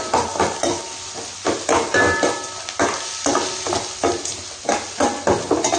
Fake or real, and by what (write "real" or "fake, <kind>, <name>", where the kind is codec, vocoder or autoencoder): real